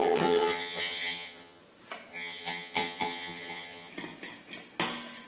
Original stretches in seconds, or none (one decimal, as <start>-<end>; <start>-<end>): 1.6-2.1; 3.9-5.3